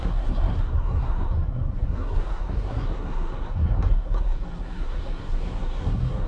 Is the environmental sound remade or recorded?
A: remade